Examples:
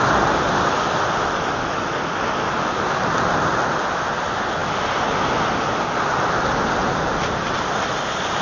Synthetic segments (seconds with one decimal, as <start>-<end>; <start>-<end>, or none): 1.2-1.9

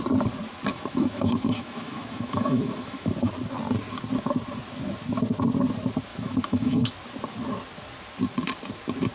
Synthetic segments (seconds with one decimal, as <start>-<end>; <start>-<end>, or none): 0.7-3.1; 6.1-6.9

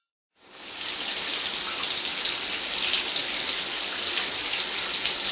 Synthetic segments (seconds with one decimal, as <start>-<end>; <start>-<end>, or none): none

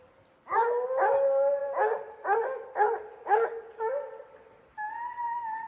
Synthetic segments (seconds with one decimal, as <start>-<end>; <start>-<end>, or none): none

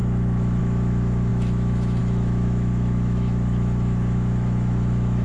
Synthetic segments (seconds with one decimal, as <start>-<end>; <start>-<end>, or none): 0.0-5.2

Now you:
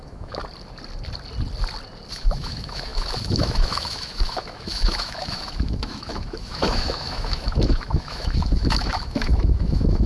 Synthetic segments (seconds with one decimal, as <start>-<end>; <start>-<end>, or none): 0.0-0.4; 2.1-10.1